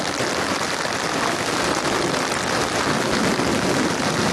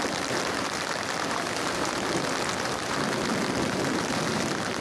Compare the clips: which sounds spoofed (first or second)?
second